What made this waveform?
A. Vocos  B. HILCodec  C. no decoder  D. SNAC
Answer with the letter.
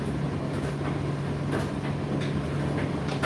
C